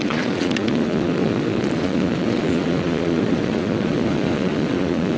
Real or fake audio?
fake